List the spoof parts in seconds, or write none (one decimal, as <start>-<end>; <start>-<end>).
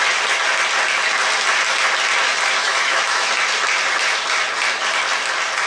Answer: 2.6-3.3